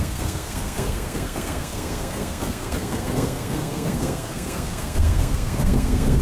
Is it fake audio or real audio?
fake